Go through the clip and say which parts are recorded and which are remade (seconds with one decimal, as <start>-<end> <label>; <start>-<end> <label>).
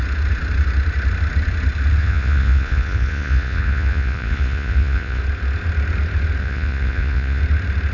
0.0-2.0 recorded; 2.0-5.2 remade; 5.2-6.4 recorded; 6.4-7.4 remade; 7.4-7.9 recorded